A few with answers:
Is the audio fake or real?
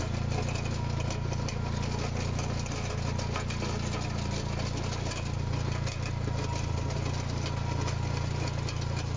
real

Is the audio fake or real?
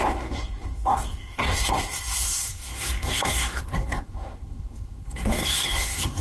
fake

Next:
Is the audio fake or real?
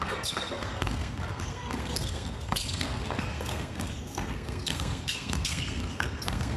fake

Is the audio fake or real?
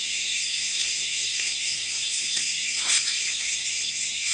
fake